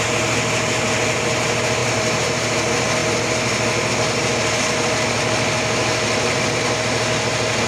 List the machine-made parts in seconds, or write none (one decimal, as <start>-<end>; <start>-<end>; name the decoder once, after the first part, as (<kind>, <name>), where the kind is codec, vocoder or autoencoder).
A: 1.8-2.5 (vocoder, BigVGAN v2)